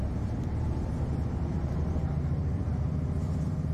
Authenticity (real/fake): fake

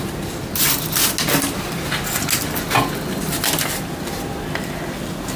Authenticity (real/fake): real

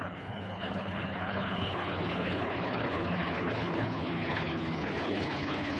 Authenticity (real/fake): fake